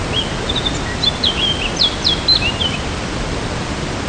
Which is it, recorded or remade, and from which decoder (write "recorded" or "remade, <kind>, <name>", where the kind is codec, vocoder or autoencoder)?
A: recorded